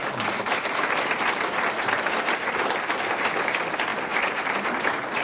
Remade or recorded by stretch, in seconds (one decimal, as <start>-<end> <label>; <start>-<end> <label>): 0.0-5.2 recorded